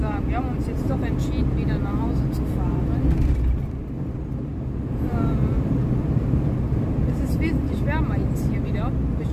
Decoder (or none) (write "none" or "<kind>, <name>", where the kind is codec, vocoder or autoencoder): none